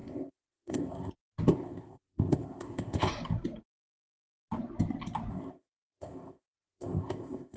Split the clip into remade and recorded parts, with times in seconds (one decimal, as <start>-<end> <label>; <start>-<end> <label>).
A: 0.0-1.1 remade; 1.1-1.5 recorded; 1.5-3.1 remade; 3.1-5.3 recorded; 5.3-7.6 remade